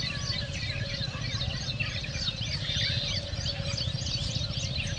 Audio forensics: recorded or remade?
recorded